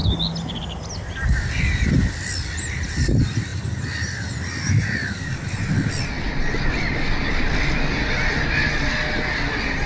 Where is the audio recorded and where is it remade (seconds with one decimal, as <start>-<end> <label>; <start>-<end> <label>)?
0.0-9.9 recorded